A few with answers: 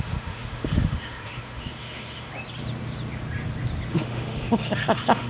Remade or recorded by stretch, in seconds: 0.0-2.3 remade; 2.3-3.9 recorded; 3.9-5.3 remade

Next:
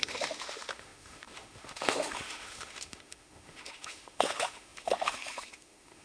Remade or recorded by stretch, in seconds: 0.0-6.0 remade

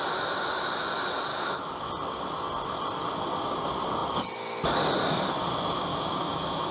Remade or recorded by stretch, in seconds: 0.0-1.3 recorded; 1.3-1.9 remade; 1.9-5.9 recorded; 5.9-6.7 remade

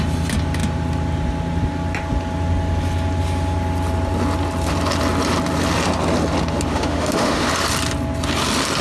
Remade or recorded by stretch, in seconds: 0.0-6.7 recorded; 6.7-7.5 remade; 7.5-8.8 recorded